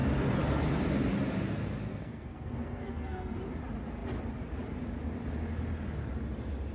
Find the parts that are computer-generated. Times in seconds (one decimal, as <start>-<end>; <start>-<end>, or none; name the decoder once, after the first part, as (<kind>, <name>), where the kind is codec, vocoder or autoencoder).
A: 1.9-3.4 (codec, SNAC)